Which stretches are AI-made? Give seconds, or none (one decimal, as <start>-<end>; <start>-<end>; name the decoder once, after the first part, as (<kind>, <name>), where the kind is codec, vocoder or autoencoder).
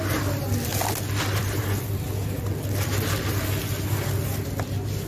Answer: none